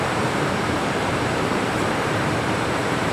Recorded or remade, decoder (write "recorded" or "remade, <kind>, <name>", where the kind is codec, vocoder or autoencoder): remade, vocoder, BigVGAN v2